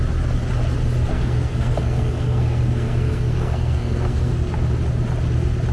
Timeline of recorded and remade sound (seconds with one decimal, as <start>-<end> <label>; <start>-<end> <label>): 0.0-1.1 recorded; 1.1-4.5 remade; 4.5-5.7 recorded